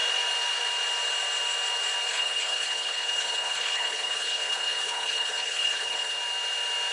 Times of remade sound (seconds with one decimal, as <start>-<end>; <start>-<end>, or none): 2.1-6.2